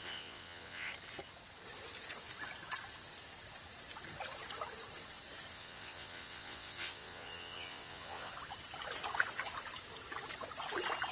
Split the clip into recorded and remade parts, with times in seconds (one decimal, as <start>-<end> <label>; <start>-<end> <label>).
0.0-0.9 remade; 0.9-5.5 recorded; 5.5-8.3 remade; 8.3-11.1 recorded

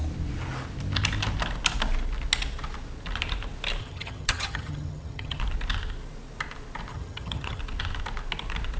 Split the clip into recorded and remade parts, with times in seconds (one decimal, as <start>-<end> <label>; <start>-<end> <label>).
0.0-3.8 recorded; 3.8-5.4 remade; 5.4-6.9 recorded; 6.9-7.6 remade; 7.6-8.8 recorded

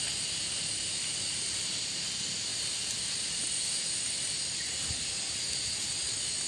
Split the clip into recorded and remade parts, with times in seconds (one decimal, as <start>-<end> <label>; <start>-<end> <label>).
0.0-6.5 recorded

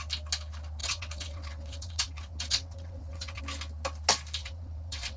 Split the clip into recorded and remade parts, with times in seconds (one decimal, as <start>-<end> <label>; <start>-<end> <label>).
0.0-0.8 recorded; 0.8-3.4 remade; 3.4-4.4 recorded; 4.4-5.2 remade

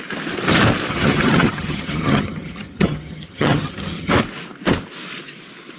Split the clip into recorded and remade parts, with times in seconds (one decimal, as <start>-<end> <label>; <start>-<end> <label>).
0.0-0.9 recorded; 0.9-4.1 remade; 4.1-5.8 recorded

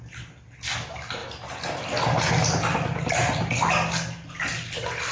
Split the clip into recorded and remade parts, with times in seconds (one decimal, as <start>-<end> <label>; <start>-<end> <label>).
0.0-5.1 recorded

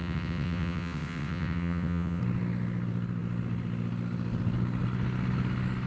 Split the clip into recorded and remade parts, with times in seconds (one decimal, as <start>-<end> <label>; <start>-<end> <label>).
0.0-2.2 remade; 2.2-5.9 recorded